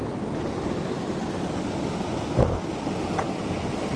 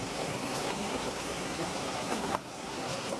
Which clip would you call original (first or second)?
first